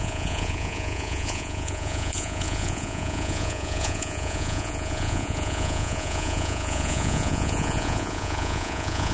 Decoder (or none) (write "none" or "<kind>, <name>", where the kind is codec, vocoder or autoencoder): vocoder, Vocos